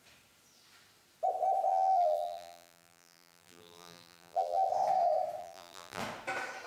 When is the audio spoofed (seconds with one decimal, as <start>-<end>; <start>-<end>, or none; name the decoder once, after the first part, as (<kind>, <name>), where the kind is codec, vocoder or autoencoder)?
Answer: 1.7-4.7 (vocoder, BigVGAN v2); 5.4-6.0